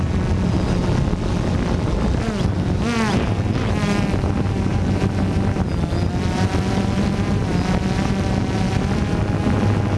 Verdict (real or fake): real